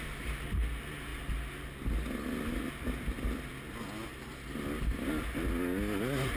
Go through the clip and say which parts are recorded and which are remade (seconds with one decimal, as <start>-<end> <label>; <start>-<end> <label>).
0.0-6.4 recorded